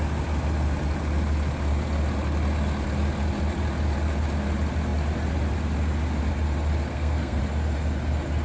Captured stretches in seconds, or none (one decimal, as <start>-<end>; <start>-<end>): 0.0-6.9; 7.4-8.4